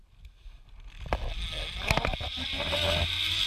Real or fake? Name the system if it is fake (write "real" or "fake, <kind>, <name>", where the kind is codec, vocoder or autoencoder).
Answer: real